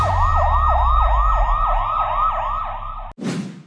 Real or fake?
real